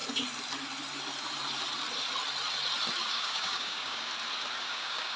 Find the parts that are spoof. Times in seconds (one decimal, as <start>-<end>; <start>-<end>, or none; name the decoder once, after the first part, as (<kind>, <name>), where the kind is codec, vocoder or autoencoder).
3.1-4.1 (codec, DAC); 4.6-5.2